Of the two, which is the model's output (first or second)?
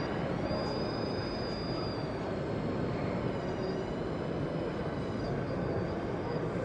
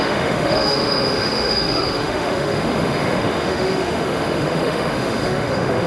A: second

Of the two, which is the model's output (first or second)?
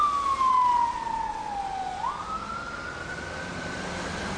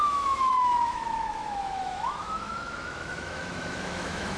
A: second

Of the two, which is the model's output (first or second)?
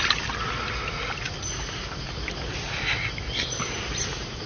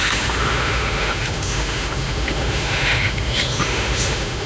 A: second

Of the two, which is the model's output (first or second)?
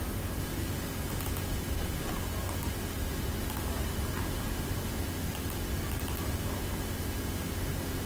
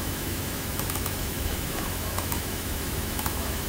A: second